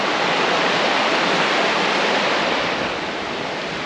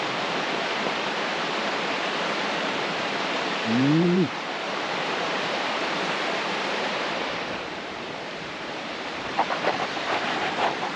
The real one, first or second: first